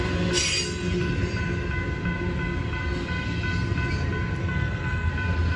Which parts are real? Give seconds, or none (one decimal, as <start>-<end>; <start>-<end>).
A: 0.0-4.4; 5.1-5.6